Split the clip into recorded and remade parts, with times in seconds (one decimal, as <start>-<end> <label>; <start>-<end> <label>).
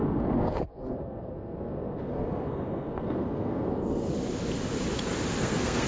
0.0-4.1 remade; 4.1-5.4 recorded; 5.4-5.9 remade